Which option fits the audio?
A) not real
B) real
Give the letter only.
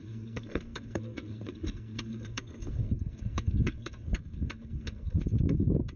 A